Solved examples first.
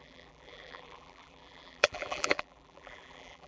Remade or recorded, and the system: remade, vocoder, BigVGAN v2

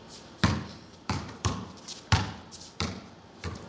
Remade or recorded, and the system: remade, vocoder, BigVGAN v2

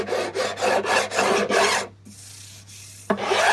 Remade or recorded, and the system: recorded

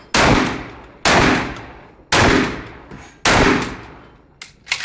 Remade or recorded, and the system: recorded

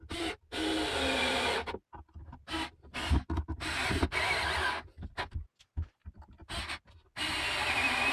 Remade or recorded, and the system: recorded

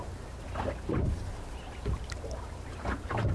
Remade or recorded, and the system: recorded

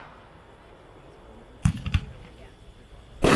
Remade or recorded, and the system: recorded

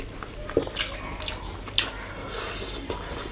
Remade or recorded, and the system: recorded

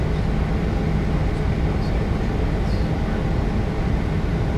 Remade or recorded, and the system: recorded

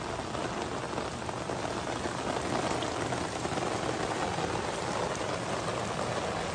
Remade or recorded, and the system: recorded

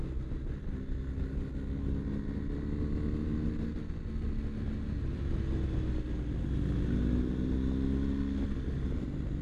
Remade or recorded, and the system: recorded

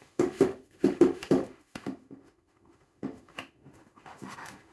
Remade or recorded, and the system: remade, autoencoder, DAC-VAE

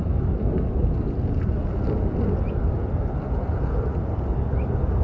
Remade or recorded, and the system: recorded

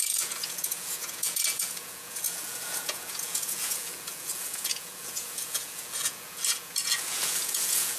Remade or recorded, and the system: remade, vocoder, Vocos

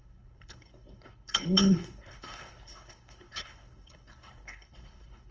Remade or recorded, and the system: remade, codec, HILCodec